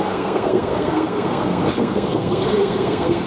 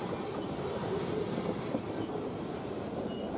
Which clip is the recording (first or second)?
second